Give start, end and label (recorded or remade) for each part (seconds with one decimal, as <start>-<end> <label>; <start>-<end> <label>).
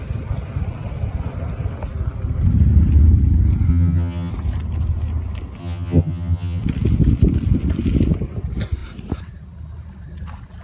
0.0-3.7 recorded; 3.7-4.3 remade; 4.3-5.6 recorded; 5.6-6.6 remade; 6.6-10.6 recorded